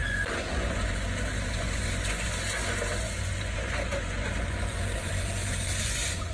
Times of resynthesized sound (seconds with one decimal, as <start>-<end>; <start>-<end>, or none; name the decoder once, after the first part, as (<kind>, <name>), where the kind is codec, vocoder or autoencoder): 0.0-6.3 (vocoder, Vocos)